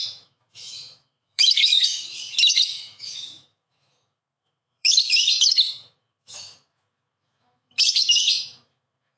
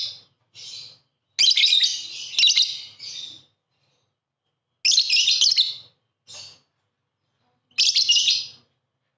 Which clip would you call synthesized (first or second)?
first